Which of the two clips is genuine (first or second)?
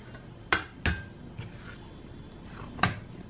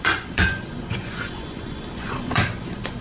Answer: first